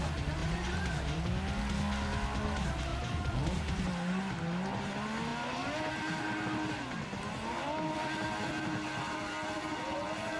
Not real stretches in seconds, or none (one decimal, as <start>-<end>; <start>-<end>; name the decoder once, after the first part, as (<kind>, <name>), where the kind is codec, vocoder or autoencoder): 0.4-1.2 (vocoder, BigVGAN v2); 2.9-3.8